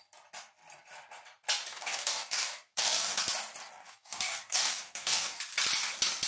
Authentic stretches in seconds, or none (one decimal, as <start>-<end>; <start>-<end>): 0.0-1.7; 3.2-3.8; 5.4-6.3